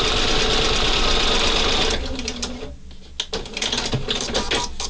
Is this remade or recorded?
recorded